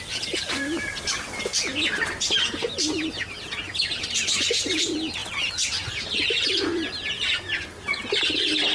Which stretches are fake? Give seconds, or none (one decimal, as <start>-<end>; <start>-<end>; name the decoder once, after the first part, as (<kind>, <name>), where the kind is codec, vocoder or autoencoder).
none